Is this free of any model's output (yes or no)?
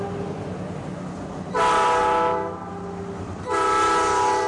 yes